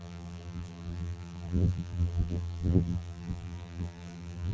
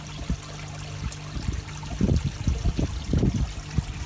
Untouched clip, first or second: second